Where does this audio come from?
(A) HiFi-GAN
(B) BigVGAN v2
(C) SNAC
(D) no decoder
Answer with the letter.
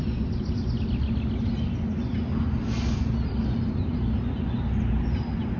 D